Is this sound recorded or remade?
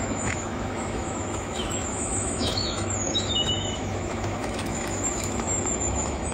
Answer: remade